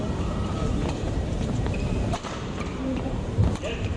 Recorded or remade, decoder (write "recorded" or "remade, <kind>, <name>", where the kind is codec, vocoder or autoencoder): remade, vocoder, BigVGAN v2